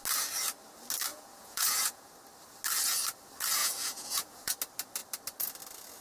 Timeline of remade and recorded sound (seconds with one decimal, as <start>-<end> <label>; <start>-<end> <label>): 0.0-1.1 recorded; 1.1-2.1 remade; 2.1-3.6 recorded; 3.6-4.5 remade; 4.5-6.0 recorded